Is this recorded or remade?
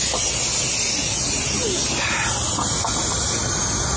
recorded